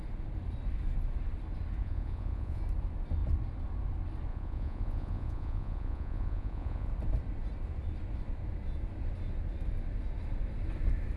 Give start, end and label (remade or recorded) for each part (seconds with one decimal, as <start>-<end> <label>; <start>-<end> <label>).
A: 0.0-1.8 recorded; 1.8-2.6 remade; 2.6-4.3 recorded; 4.3-6.9 remade; 6.9-11.2 recorded